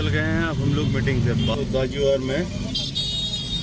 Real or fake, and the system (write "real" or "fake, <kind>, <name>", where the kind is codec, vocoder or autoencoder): real